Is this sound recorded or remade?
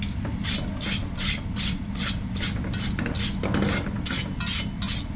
recorded